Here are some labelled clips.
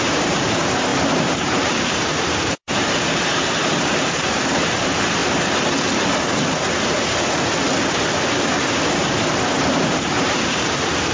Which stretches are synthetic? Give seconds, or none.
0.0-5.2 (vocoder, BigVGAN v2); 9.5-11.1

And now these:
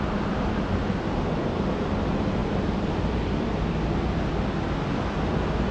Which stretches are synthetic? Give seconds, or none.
none

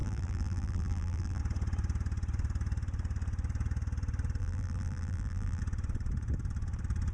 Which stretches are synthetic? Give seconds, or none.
0.0-1.4 (vocoder, BigVGAN v2); 4.4-5.6

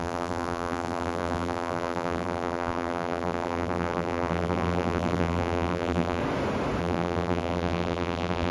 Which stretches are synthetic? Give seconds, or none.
0.0-6.2 (vocoder, BigVGAN v2); 6.8-8.5

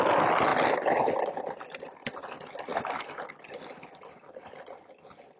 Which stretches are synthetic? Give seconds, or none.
0.0-2.7 (vocoder, BigVGAN v2); 3.3-5.4

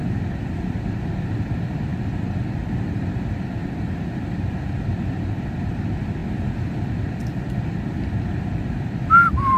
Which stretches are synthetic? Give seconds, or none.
0.0-9.6 (vocoder, BigVGAN v2)

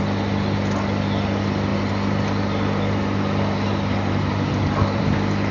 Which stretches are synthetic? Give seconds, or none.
none

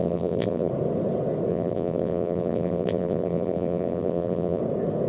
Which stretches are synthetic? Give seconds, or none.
0.0-0.7 (vocoder, BigVGAN v2); 1.5-4.6